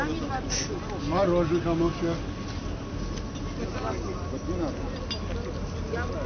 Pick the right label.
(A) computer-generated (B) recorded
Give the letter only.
B